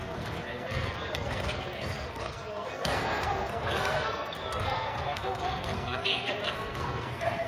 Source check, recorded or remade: remade